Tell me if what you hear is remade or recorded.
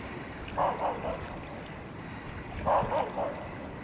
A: recorded